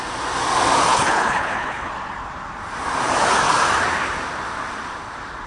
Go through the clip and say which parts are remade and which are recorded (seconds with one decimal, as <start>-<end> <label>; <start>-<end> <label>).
0.0-0.9 recorded; 0.9-1.9 remade; 1.9-5.5 recorded